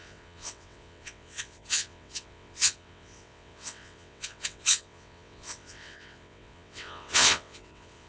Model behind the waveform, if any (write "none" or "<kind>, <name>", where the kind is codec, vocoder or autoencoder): vocoder, WaveNeXt